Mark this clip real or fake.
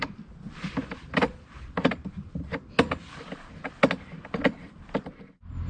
real